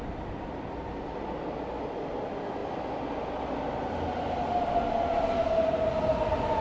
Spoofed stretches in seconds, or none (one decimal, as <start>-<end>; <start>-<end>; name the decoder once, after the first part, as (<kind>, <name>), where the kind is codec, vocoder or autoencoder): none